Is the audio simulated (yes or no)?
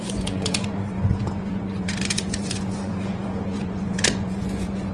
yes